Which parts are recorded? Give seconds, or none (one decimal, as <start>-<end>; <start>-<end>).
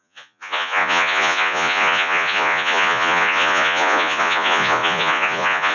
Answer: none